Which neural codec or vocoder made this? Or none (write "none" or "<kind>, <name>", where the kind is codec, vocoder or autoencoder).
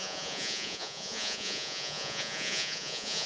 vocoder, Vocos